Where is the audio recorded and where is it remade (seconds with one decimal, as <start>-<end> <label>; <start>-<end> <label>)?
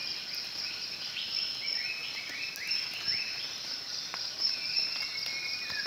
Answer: 0.0-5.9 recorded